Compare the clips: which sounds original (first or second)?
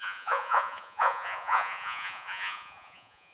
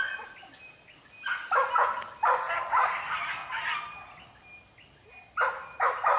second